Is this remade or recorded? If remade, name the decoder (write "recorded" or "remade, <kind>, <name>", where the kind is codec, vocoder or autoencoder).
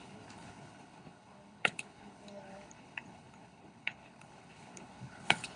remade, codec, HILCodec